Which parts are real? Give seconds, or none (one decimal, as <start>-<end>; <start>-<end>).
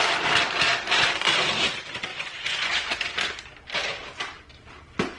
0.0-2.1; 3.1-5.2